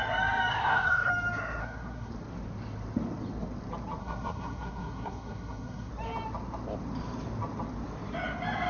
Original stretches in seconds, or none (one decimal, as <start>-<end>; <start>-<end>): 0.0-0.5; 1.1-1.6; 2.1-4.0; 5.9-8.7